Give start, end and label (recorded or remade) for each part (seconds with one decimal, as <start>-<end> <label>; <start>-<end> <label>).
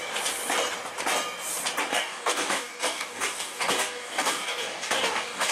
0.0-1.9 recorded; 1.9-5.5 remade